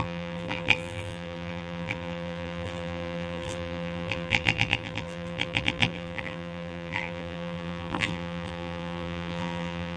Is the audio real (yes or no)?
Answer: no